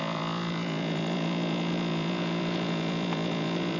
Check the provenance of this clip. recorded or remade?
remade